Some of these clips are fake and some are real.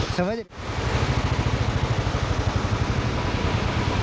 real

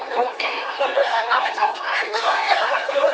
fake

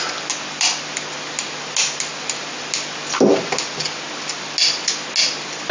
real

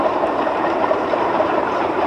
fake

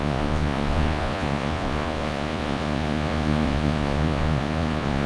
fake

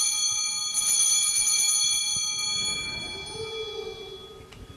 real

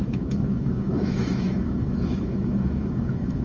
fake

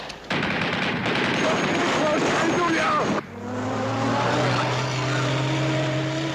real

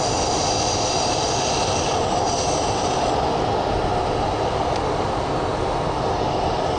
real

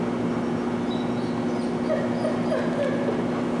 real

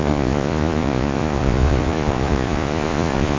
fake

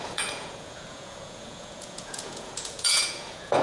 fake